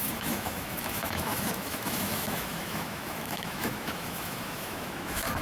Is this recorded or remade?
remade